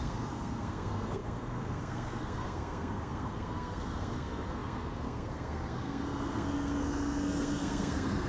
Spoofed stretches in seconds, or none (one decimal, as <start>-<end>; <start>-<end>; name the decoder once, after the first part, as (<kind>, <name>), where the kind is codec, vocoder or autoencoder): 0.0-8.3 (codec, SNAC)